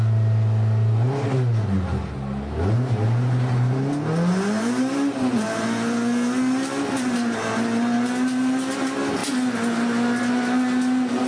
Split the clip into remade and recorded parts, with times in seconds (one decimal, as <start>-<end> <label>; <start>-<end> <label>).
0.0-11.3 recorded